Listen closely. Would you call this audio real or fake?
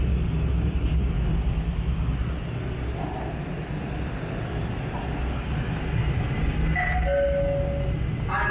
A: real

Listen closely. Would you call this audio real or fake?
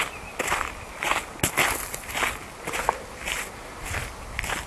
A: real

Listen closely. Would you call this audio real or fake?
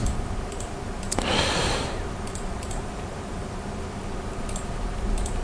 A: fake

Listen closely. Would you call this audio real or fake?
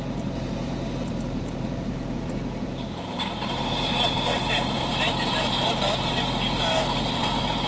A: fake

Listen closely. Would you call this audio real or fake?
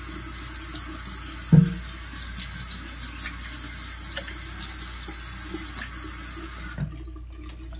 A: real